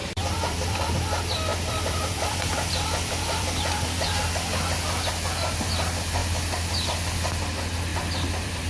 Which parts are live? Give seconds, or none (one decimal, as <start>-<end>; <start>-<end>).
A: 0.9-1.5; 4.3-7.9